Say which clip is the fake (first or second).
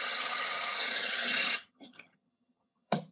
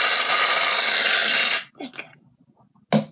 first